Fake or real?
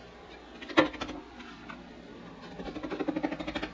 real